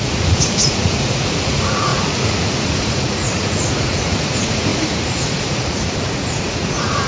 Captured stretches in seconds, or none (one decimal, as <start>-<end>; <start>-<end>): none